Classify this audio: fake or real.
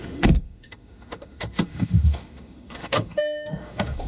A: fake